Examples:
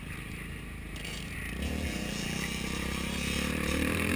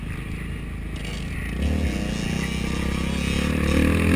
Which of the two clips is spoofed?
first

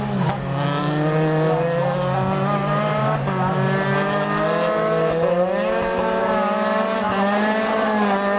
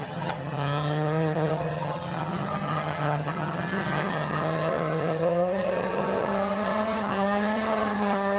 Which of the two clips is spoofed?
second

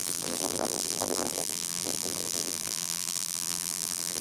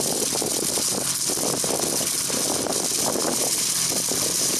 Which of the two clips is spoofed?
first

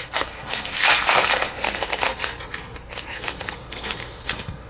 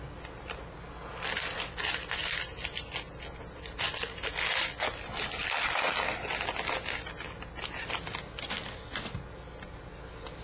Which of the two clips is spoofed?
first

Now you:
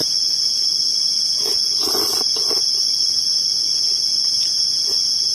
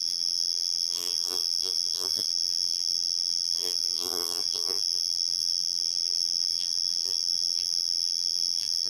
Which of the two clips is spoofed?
second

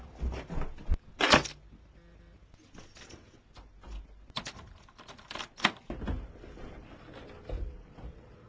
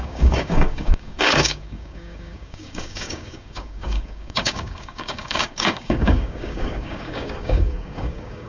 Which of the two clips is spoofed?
second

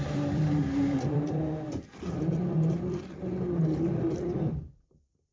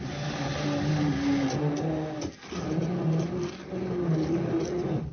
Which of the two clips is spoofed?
first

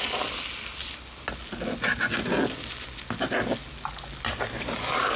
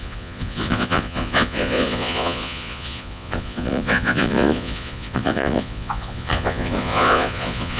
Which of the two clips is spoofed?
second